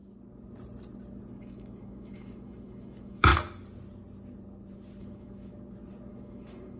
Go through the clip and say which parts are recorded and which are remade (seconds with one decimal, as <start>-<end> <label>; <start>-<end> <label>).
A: 0.0-1.4 recorded; 1.4-3.3 remade; 3.3-5.0 recorded; 5.0-5.5 remade; 5.5-6.1 recorded; 6.1-6.8 remade